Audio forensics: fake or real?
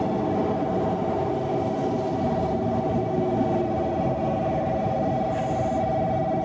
real